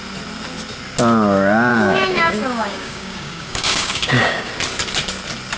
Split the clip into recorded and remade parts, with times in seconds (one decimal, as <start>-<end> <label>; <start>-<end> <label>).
0.0-1.7 recorded; 1.7-4.5 remade; 4.5-5.6 recorded